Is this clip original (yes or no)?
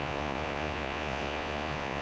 no